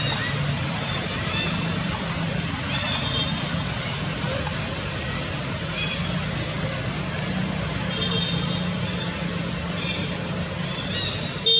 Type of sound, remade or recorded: recorded